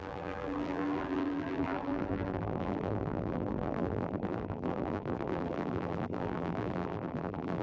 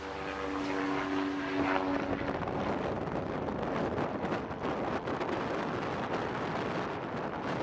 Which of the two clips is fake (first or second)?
first